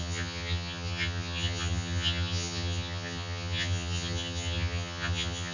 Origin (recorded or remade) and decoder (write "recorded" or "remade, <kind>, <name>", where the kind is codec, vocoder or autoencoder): remade, vocoder, HiFi-GAN